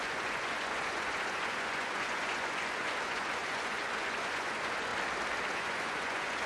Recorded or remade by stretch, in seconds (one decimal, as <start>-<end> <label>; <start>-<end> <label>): 0.0-4.9 remade; 4.9-5.5 recorded; 5.5-6.5 remade